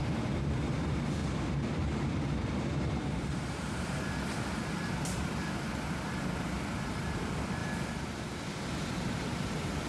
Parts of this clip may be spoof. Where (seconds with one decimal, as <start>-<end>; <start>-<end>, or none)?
0.0-7.6; 8.2-9.9